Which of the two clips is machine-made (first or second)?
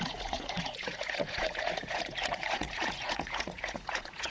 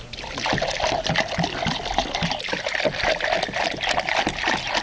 first